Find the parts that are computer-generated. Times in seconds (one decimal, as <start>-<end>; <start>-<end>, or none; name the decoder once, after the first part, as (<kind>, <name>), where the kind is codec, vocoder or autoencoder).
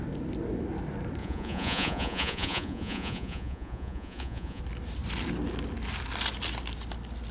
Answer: 1.2-4.6 (vocoder, Vocos)